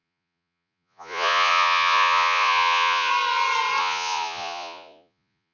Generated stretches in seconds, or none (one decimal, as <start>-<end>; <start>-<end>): 0.0-3.1; 3.8-5.5